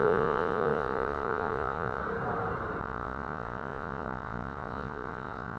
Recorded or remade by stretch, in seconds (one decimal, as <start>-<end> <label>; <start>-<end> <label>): 0.0-2.0 remade; 2.0-2.8 recorded; 2.8-5.6 remade